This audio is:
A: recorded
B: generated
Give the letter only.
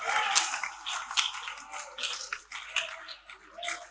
A